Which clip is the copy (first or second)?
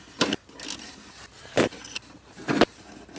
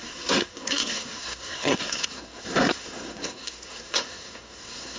second